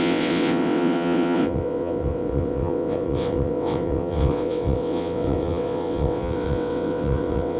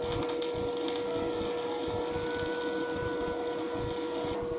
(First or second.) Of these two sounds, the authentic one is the second